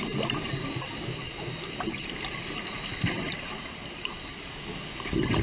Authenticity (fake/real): real